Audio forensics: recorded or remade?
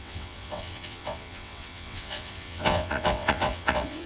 remade